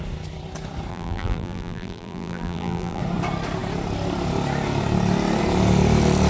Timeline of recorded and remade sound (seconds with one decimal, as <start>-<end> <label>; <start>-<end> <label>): 0.0-0.9 recorded; 0.9-3.0 remade; 3.0-6.3 recorded